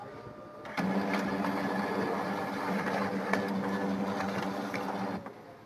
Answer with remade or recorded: recorded